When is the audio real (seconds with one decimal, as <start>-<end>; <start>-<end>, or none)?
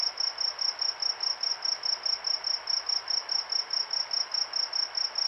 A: 0.0-5.3